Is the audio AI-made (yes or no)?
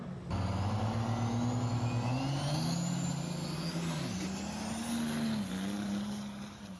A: no